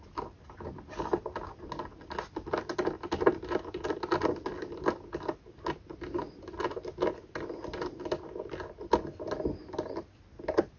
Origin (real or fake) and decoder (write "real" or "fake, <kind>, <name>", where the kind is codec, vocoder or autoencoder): real